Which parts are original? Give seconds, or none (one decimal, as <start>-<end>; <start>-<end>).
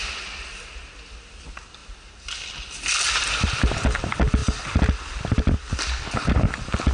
0.0-6.9